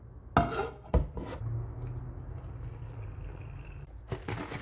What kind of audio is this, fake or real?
real